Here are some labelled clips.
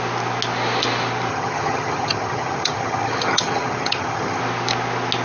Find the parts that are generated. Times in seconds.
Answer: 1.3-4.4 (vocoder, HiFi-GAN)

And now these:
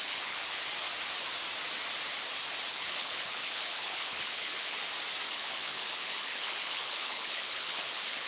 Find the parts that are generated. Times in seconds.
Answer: 0.0-0.6 (codec, HILCodec); 2.7-4.8; 5.3-8.3